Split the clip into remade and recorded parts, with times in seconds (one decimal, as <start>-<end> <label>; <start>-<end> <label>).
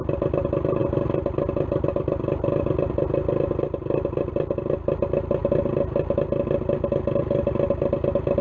0.0-8.4 recorded